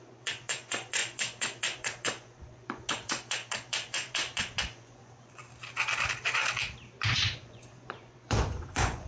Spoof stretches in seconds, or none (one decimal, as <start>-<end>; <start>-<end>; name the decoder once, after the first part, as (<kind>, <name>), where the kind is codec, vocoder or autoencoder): 0.0-5.4 (vocoder, Vocos); 7.0-9.1

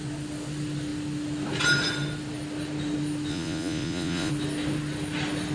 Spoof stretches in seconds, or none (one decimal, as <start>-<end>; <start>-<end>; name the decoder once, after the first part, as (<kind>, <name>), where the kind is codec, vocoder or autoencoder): 3.3-4.3 (vocoder, Vocos)

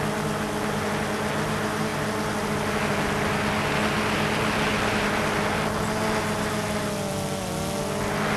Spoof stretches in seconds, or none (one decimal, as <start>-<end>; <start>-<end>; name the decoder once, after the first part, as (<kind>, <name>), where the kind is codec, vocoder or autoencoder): none

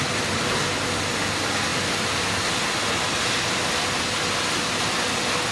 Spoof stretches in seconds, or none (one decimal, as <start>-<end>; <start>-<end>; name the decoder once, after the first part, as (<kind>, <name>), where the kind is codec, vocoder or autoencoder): none

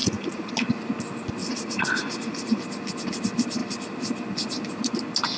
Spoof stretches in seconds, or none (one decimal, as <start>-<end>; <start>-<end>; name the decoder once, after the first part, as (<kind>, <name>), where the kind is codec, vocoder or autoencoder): 0.0-0.5 (vocoder, Vocos); 1.4-2.6

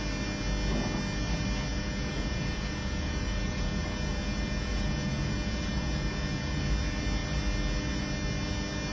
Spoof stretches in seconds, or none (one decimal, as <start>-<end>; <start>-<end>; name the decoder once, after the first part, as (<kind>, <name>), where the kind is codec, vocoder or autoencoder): 1.7-6.6 (vocoder, Vocos)